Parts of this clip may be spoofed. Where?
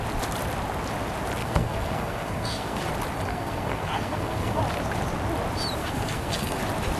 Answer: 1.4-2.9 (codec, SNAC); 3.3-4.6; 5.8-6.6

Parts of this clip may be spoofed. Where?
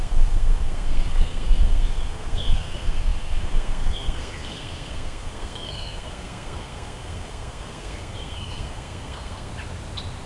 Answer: 0.0-9.5 (codec, SNAC)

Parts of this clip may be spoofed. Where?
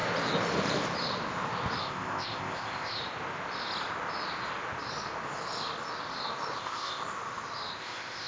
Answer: 1.8-3.0 (codec, ZipCodec); 6.6-7.0; 7.8-8.3